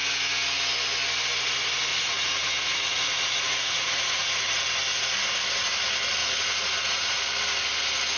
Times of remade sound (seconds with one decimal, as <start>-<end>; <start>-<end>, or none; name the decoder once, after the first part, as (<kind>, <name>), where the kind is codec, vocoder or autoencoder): 1.9-4.5 (vocoder, Vocos); 6.2-7.2